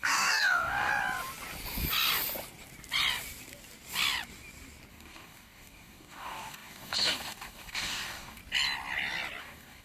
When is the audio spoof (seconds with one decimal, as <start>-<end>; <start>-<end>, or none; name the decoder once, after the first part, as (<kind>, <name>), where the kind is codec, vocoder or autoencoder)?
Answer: 0.0-0.9 (codec, DAC); 4.9-8.4; 9.4-9.8